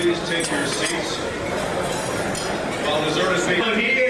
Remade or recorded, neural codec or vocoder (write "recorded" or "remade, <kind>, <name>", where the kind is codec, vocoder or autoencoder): recorded